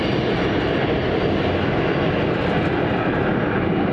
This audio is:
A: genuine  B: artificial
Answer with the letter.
A